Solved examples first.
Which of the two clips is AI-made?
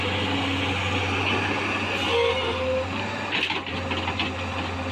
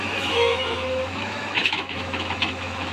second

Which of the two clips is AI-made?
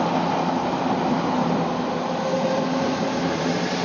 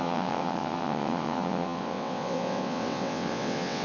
second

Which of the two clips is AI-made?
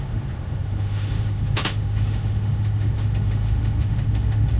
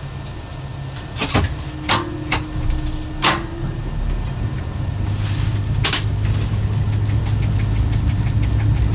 first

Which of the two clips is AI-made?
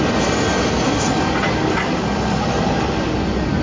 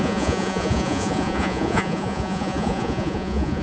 second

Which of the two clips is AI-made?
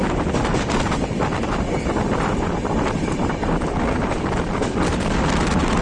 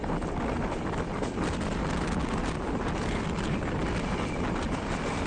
first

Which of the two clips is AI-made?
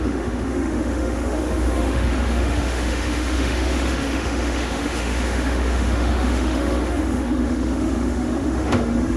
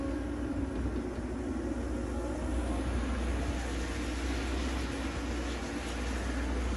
first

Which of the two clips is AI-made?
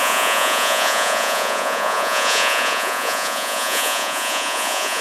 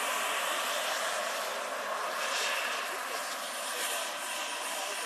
first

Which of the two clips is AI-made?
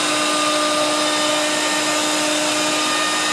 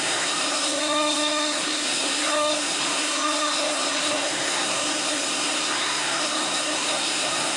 second